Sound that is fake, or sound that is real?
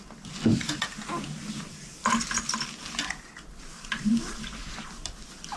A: real